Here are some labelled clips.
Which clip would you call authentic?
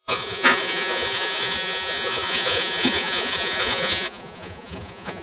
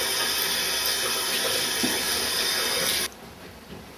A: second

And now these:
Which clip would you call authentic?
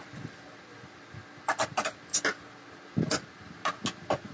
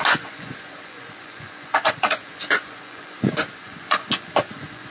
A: first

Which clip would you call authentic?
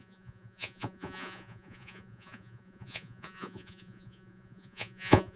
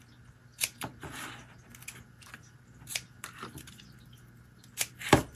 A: second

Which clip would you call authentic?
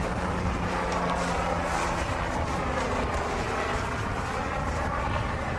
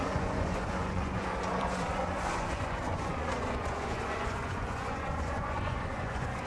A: first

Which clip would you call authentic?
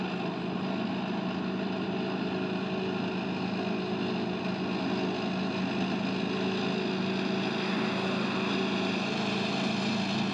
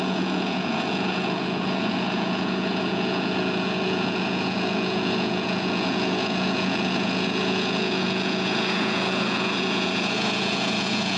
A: first